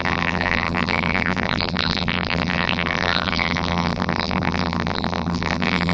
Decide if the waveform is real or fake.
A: fake